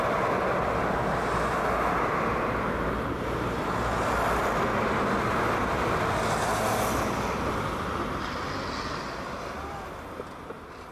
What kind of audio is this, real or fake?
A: real